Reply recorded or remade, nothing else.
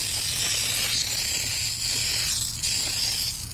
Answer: recorded